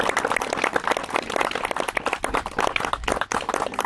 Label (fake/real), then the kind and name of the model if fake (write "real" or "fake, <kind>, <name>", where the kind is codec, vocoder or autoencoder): real